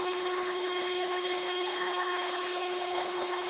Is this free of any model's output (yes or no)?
no